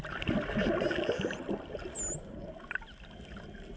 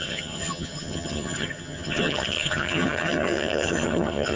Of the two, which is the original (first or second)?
first